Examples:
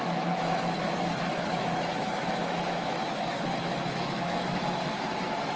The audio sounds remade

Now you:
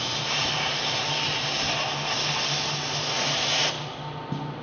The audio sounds recorded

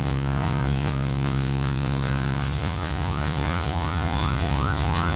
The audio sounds remade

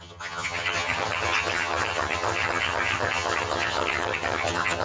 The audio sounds remade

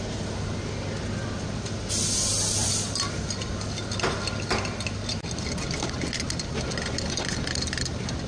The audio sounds recorded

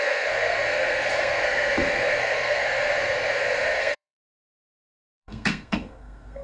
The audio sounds remade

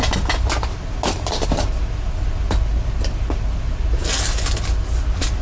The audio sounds recorded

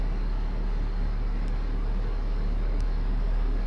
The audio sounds remade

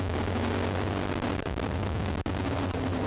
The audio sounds recorded